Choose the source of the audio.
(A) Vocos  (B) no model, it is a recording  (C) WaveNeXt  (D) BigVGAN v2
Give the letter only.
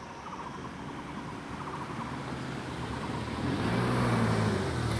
B